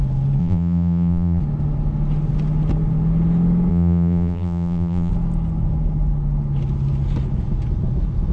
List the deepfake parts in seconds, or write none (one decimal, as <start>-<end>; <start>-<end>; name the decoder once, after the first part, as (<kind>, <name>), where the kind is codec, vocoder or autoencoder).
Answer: 0.4-1.4 (vocoder, BigVGAN v2); 3.7-5.1